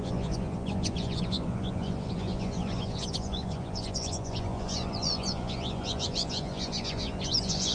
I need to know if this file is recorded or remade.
remade